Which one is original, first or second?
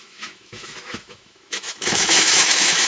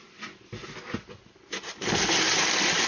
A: second